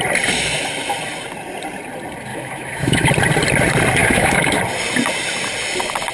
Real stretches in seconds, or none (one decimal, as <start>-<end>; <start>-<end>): 0.0-2.3; 3.1-4.0; 4.6-6.1